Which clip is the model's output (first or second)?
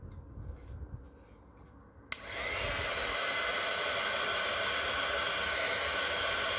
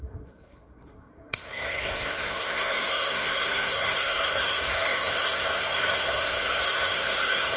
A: second